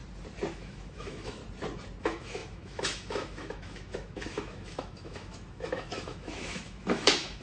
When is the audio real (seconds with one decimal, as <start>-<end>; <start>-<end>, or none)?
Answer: 0.0-0.5; 1.4-2.0